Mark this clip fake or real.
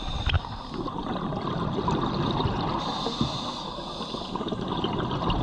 real